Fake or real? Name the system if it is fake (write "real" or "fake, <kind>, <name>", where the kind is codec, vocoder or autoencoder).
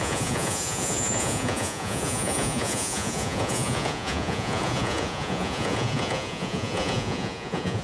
fake, vocoder, Vocos